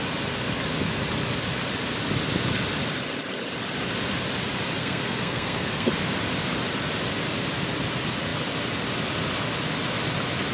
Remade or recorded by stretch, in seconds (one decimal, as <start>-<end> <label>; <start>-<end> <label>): 0.0-4.8 recorded; 4.8-5.9 remade; 5.9-10.5 recorded